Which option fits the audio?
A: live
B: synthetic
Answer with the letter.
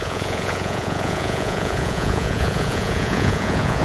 B